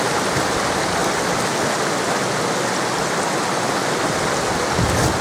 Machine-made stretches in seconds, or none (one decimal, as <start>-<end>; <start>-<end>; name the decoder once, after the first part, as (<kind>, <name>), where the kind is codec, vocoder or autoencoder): none